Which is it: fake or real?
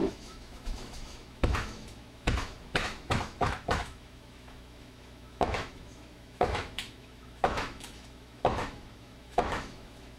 fake